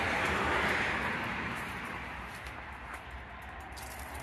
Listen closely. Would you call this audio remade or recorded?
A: remade